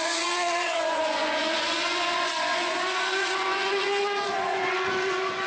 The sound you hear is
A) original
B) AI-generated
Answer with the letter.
B